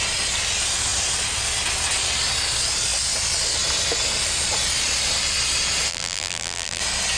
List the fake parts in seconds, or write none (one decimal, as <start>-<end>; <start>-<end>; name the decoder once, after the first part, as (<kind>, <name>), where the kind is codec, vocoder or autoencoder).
5.9-6.8 (vocoder, BigVGAN v2)